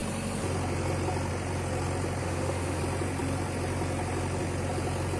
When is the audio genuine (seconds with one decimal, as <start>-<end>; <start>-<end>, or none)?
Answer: 0.0-2.2; 2.8-5.2